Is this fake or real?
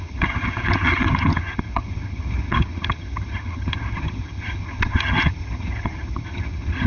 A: fake